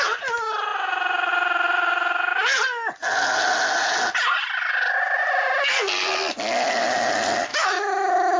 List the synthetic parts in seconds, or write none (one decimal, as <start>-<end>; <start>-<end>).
7.5-8.4